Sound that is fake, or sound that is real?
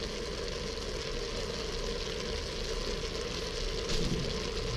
real